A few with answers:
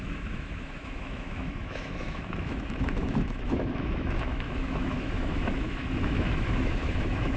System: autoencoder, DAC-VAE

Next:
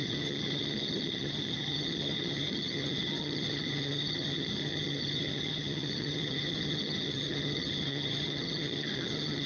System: vocoder, HiFi-GAN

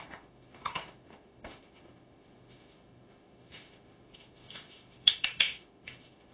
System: autoencoder, DAC-VAE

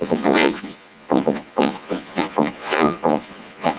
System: vocoder, Vocos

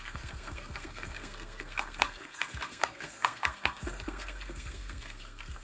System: codec, SNAC